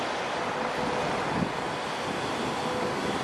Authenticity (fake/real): real